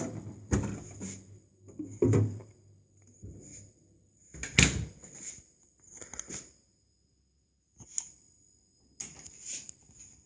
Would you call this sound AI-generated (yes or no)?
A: no